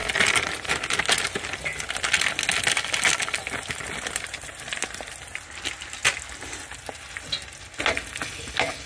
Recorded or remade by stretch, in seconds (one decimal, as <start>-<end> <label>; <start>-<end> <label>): 0.0-3.4 recorded; 3.4-5.4 remade; 5.4-8.9 recorded